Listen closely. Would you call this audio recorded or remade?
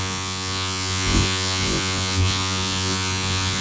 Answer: remade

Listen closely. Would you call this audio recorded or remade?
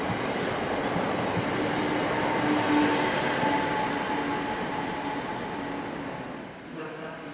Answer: recorded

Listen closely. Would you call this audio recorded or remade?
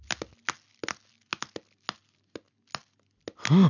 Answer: recorded